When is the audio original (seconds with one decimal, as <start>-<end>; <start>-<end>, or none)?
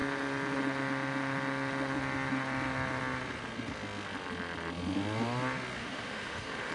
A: 0.0-5.8